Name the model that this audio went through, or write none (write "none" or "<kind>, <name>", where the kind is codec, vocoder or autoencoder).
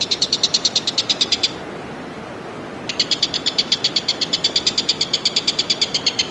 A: none